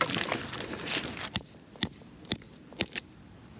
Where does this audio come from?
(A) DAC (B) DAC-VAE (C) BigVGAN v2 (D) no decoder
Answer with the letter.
D